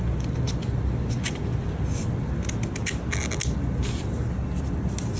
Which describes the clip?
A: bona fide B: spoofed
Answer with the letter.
A